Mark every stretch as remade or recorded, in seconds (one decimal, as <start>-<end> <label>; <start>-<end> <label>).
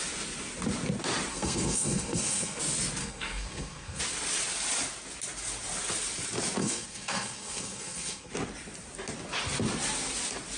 0.0-1.3 recorded; 1.3-2.6 remade; 2.6-3.0 recorded; 3.0-4.0 remade; 4.0-6.6 recorded; 6.6-8.3 remade; 8.3-10.6 recorded